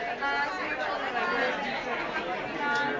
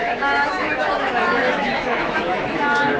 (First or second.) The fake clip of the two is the second